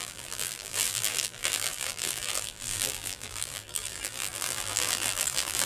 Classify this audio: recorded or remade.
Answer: remade